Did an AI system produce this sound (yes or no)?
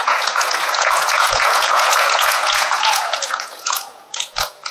yes